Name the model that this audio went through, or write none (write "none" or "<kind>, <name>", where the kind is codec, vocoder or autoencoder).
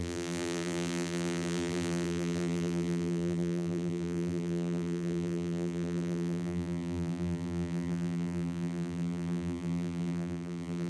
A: vocoder, BigVGAN v2